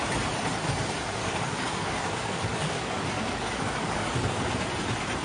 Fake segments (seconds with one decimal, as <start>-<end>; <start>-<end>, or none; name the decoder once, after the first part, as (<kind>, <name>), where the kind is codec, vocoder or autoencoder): 1.2-4.3 (codec, DAC)